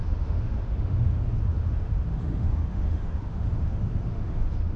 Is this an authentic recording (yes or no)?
no